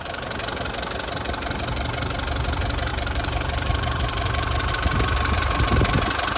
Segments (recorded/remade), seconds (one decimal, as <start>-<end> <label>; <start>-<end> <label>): 0.0-2.9 recorded; 2.9-4.7 remade; 4.7-6.4 recorded